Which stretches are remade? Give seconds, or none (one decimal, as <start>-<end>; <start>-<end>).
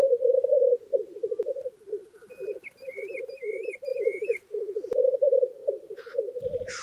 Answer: 3.9-5.0